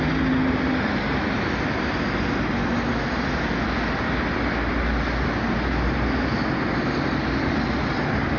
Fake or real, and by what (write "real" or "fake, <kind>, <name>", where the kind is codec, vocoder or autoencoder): real